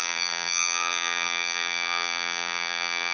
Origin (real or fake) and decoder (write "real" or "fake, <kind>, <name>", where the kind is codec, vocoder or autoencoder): fake, vocoder, BigVGAN v2